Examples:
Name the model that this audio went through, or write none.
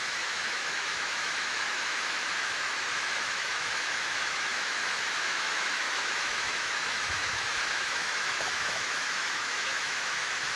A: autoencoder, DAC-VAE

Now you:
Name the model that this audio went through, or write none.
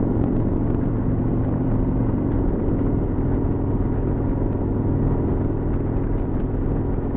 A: none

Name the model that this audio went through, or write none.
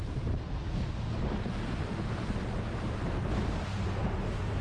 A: none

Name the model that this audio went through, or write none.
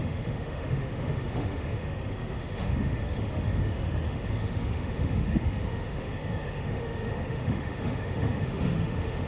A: autoencoder, DAC-VAE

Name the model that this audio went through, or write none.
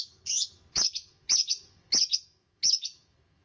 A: autoencoder, DAC-VAE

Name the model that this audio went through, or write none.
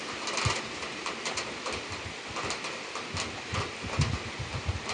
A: none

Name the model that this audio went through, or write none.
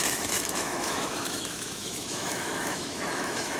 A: autoencoder, DAC-VAE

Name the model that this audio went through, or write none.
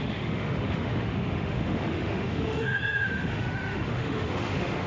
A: autoencoder, DAC-VAE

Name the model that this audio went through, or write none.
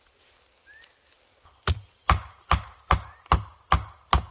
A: none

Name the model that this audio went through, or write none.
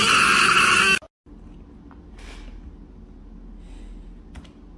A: none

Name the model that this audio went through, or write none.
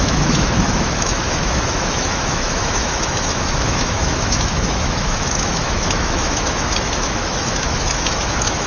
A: autoencoder, DAC-VAE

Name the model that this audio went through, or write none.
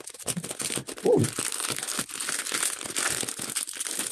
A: none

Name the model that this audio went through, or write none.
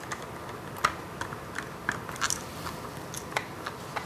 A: none